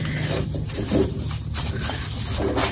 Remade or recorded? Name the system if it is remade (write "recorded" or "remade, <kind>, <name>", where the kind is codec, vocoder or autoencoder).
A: recorded